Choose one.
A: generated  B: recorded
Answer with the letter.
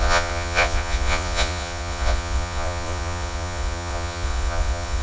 A